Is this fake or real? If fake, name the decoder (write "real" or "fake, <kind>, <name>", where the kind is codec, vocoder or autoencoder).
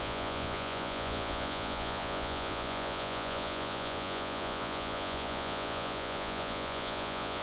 fake, vocoder, Vocos